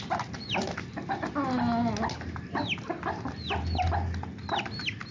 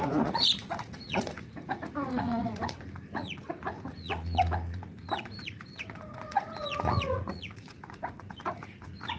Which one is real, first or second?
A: first